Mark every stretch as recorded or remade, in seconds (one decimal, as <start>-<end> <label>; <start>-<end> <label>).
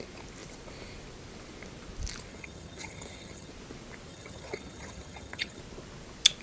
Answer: 0.0-2.3 recorded; 2.3-3.5 remade; 3.5-4.1 recorded; 4.1-5.6 remade; 5.6-6.4 recorded